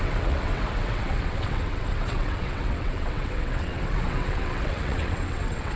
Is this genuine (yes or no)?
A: no